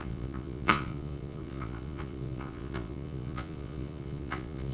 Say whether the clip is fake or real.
fake